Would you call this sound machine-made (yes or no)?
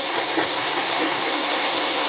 yes